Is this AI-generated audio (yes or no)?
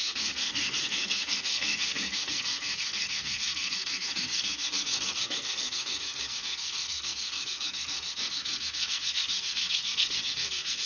yes